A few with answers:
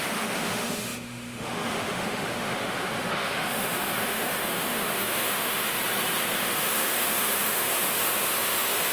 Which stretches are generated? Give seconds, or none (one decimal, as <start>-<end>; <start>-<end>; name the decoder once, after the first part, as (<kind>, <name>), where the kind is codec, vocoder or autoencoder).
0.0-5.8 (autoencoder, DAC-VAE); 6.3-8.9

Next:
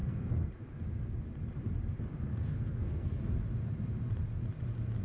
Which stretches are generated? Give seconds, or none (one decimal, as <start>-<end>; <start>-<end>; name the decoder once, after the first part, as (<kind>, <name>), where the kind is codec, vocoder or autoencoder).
0.0-0.5 (codec, SNAC); 2.3-3.2

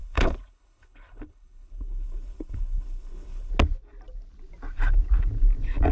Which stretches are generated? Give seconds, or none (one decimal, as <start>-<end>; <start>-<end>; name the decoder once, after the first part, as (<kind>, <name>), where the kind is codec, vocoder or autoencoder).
0.0-3.5 (codec, HILCodec)